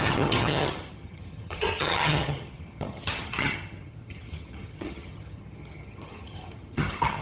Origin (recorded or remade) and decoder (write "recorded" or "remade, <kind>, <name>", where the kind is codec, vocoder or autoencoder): remade, vocoder, HiFi-GAN